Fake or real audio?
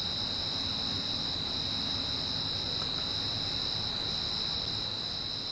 real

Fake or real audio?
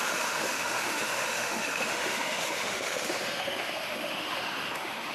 fake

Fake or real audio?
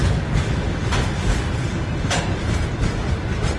real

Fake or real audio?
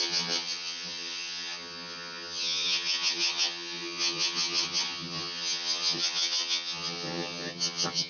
fake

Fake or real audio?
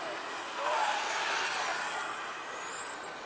real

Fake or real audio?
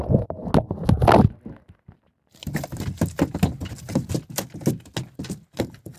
real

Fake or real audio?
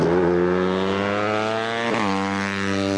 real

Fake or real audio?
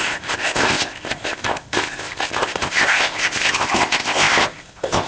fake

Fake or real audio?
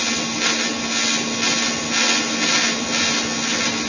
real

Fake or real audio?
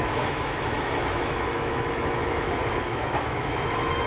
fake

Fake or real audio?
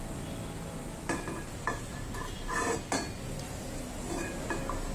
real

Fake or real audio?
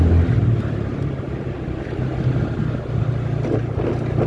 real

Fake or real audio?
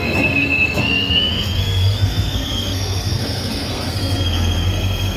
fake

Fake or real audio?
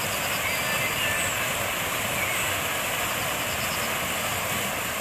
real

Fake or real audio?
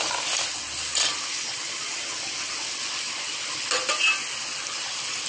real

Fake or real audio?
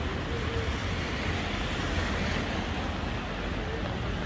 real